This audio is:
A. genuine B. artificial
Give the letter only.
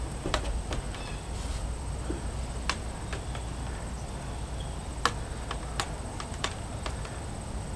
A